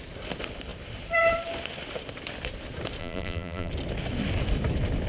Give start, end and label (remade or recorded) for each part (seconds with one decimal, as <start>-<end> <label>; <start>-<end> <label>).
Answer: 0.0-3.0 recorded; 3.0-3.7 remade; 3.7-5.1 recorded